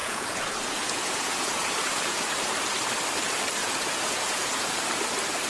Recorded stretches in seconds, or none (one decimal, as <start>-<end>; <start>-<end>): 2.3-3.6; 4.8-5.5